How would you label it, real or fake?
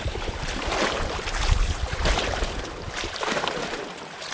fake